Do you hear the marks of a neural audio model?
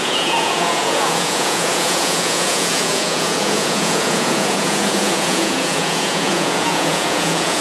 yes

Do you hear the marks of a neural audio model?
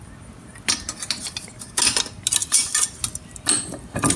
no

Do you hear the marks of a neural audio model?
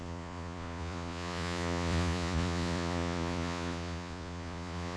yes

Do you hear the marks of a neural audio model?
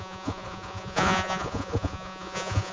yes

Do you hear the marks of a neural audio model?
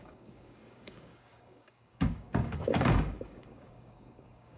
yes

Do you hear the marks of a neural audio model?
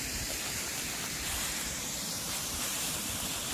yes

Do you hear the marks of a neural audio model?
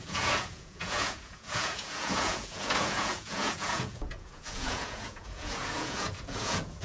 yes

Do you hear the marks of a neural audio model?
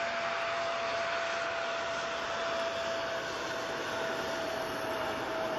no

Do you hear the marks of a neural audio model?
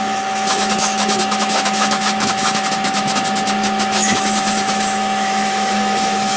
yes